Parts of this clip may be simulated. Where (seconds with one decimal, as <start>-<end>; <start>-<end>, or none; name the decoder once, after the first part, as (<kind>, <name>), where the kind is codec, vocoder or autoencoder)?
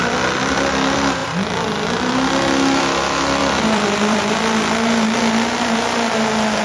3.4-4.2 (vocoder, BigVGAN v2)